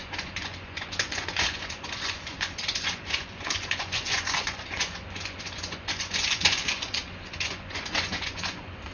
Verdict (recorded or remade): remade